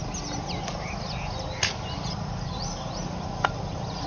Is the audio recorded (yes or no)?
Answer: yes